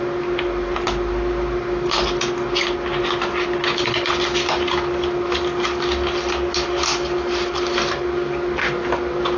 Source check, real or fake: real